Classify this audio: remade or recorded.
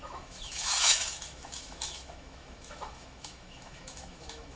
remade